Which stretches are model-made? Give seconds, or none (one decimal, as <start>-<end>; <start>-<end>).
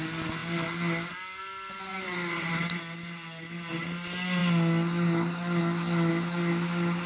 none